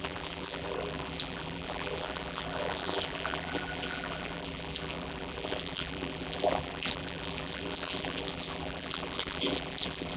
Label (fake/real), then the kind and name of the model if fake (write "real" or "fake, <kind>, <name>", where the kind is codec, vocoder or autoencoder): fake, vocoder, BigVGAN v2